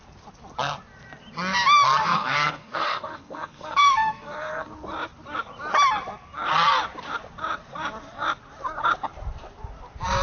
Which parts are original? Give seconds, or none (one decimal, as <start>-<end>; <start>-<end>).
0.0-2.0; 4.7-10.2